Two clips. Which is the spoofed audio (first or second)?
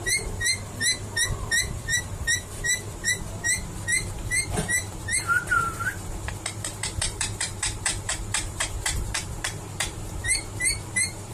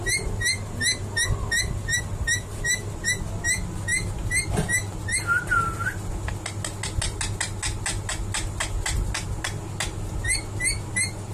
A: first